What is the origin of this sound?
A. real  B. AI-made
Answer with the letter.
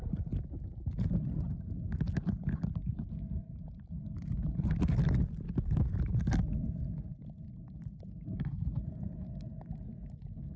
A